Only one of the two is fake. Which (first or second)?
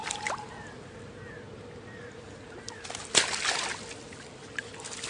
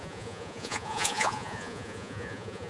second